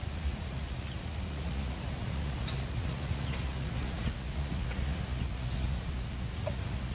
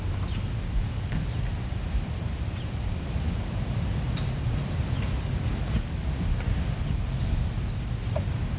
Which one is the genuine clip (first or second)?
second